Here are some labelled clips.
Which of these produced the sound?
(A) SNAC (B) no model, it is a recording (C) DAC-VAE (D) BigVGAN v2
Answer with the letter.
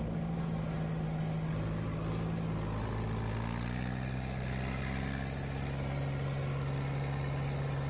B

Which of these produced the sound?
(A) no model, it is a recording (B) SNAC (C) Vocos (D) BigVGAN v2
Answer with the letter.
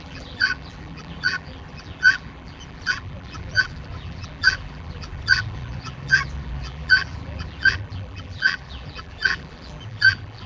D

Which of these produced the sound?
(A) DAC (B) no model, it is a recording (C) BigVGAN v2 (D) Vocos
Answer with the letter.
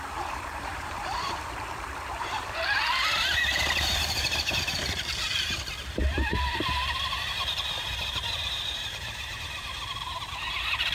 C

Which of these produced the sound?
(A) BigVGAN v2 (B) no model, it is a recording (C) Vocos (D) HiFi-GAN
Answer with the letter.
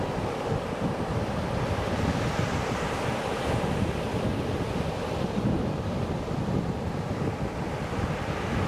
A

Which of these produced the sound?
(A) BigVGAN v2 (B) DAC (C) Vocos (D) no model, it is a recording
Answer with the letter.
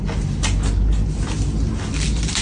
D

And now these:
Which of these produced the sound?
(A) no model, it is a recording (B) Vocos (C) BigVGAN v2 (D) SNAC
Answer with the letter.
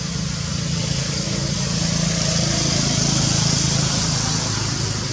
A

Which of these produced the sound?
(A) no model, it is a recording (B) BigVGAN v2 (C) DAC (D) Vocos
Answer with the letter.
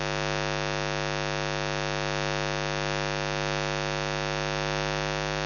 A